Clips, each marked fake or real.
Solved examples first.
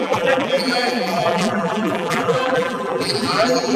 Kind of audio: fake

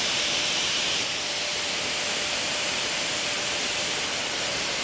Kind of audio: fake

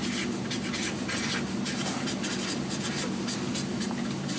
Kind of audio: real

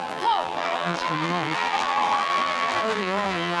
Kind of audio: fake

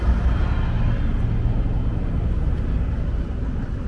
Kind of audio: real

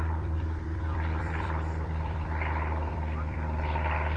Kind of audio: fake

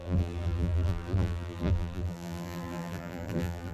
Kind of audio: fake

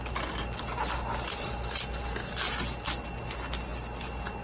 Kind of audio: real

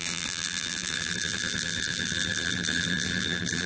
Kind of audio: fake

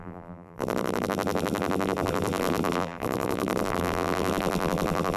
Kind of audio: fake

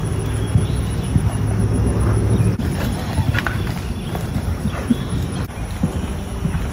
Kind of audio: real